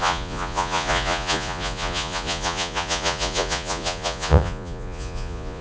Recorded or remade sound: remade